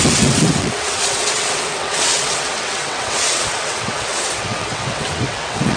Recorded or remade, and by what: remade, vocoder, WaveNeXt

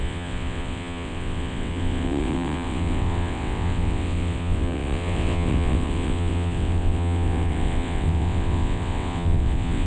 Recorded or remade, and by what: remade, vocoder, WaveNeXt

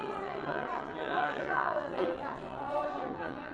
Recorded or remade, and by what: remade, vocoder, WaveNeXt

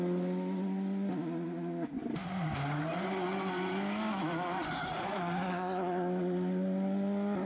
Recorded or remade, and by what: recorded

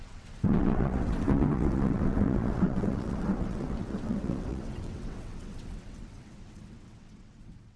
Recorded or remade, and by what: remade, vocoder, WaveNeXt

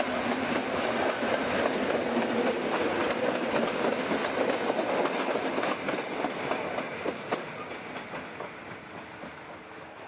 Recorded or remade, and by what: recorded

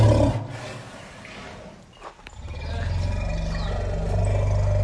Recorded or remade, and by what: recorded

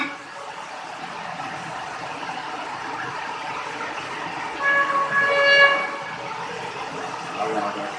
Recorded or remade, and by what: recorded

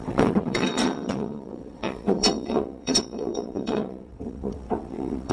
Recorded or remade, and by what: remade, vocoder, WaveNeXt